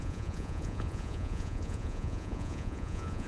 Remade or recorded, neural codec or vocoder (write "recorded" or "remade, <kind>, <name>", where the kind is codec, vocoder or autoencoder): remade, vocoder, Vocos